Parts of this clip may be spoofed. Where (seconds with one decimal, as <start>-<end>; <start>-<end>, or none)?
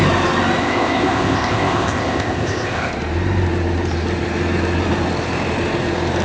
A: 0.6-2.9